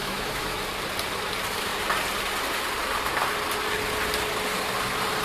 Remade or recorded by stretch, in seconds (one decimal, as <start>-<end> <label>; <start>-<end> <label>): 0.0-0.6 remade; 0.6-5.2 recorded